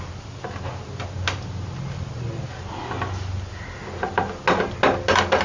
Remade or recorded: recorded